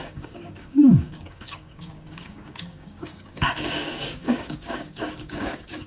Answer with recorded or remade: remade